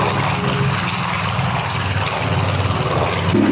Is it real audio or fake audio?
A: real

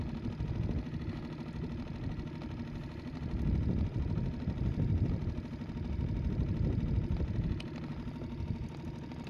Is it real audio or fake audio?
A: real